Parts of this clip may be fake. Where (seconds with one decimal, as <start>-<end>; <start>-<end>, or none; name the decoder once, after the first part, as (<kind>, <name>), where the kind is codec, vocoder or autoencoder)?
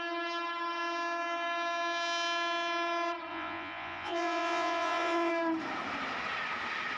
3.3-5.3 (vocoder, Vocos)